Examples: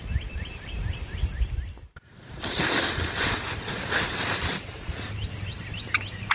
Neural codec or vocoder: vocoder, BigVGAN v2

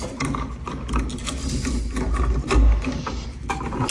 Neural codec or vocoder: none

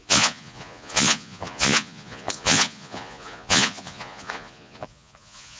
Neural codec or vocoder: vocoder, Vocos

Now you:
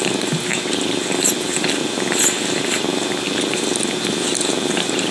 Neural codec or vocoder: none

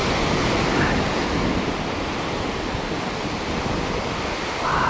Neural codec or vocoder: none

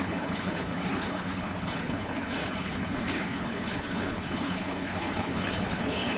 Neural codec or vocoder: codec, HILCodec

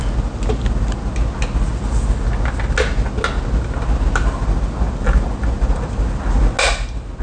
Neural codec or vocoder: none